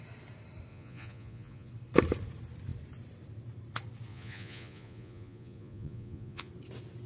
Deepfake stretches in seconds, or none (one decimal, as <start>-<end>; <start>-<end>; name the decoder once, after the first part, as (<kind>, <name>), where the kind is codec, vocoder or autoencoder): 0.7-1.7 (vocoder, Vocos); 4.1-6.5